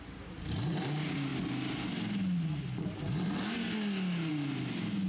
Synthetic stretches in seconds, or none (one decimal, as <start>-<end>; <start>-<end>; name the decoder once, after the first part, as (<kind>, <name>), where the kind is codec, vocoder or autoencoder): none